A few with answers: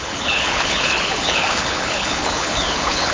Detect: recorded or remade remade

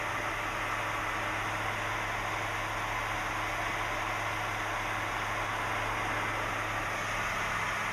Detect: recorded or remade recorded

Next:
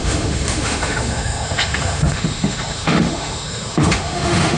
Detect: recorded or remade remade